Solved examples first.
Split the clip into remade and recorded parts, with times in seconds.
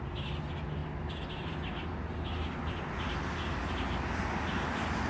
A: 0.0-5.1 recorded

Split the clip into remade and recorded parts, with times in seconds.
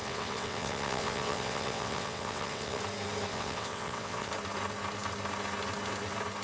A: 0.0-2.8 remade; 2.8-3.3 recorded; 3.3-4.3 remade; 4.3-6.4 recorded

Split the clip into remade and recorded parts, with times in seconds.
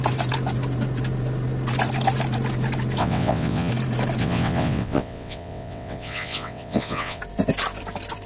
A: 0.0-3.0 recorded; 3.0-3.7 remade; 3.7-4.2 recorded; 4.2-7.2 remade; 7.2-8.3 recorded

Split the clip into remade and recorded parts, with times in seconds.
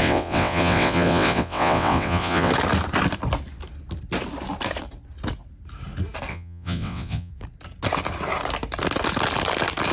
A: 0.0-2.5 remade; 2.5-6.3 recorded; 6.3-7.3 remade; 7.3-9.9 recorded